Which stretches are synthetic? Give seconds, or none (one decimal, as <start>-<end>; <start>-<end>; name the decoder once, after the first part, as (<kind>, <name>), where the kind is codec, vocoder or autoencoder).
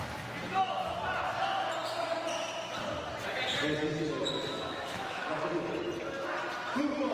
0.5-1.0 (autoencoder, DAC-VAE); 4.5-5.7